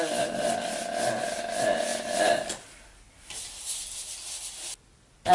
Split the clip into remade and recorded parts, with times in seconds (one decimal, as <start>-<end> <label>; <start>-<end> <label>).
0.0-5.3 recorded